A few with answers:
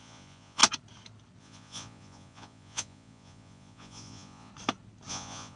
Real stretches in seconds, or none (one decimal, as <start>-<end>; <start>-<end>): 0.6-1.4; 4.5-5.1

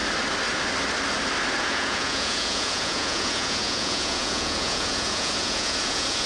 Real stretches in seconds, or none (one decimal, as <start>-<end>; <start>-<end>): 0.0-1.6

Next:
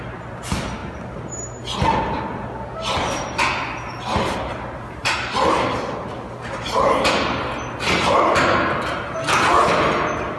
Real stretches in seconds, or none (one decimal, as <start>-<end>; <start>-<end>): 0.0-10.4